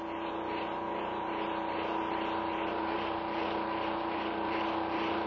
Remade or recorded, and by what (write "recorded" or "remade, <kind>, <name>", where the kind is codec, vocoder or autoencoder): recorded